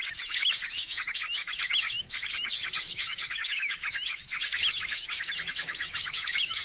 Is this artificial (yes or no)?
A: yes